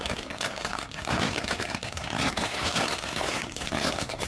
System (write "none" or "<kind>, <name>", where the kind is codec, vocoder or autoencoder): codec, SNAC